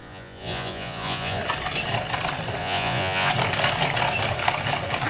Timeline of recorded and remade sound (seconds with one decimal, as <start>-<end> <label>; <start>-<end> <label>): 0.0-1.4 remade; 1.4-2.6 recorded; 2.6-3.3 remade; 3.3-5.1 recorded